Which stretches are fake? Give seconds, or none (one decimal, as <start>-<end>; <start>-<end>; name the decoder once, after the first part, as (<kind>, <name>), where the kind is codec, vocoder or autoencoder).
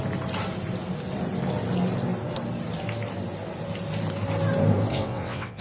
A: 4.9-5.6 (vocoder, WaveNeXt)